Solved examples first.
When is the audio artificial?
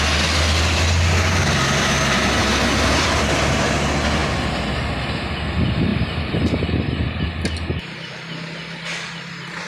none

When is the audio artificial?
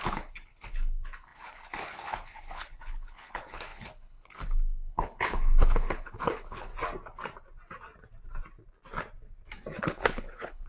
0.0-6.7; 9.8-10.7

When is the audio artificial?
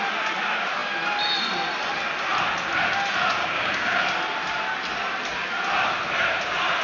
3.4-4.0